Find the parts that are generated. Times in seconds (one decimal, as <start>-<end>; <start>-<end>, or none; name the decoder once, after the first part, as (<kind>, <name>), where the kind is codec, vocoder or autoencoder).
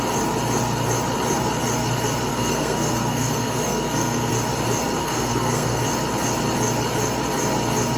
2.3-4.3 (codec, SNAC); 5.0-5.8